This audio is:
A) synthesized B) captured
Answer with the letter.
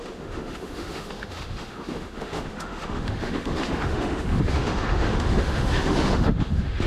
A